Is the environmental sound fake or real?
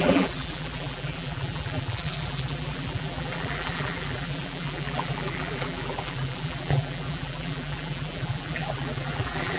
fake